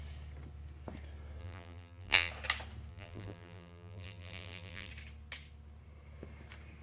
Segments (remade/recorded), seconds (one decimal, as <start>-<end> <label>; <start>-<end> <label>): 0.0-1.4 recorded; 1.4-2.3 remade; 2.3-2.9 recorded; 2.9-4.9 remade; 4.9-6.8 recorded